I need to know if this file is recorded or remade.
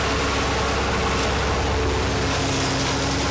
recorded